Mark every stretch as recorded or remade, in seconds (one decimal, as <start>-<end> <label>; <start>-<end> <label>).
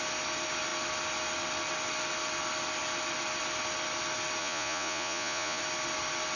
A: 0.0-4.4 recorded; 4.4-5.6 remade; 5.6-6.4 recorded